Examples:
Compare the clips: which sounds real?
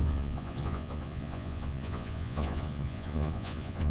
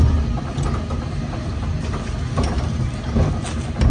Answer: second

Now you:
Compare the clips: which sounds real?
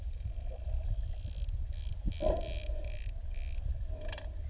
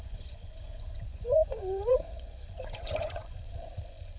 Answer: first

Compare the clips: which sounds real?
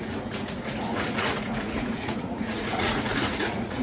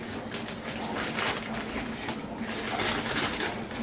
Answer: second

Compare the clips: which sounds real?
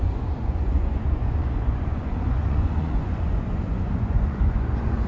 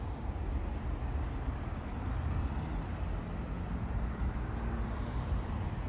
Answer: second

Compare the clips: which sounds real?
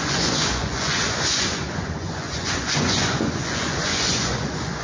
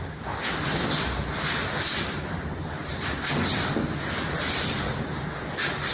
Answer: second